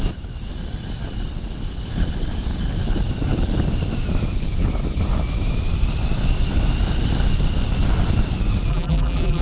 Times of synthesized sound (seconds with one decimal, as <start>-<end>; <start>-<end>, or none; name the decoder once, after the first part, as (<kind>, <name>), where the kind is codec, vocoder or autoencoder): 8.7-9.4 (vocoder, BigVGAN v2)